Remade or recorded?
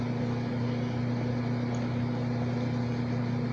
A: recorded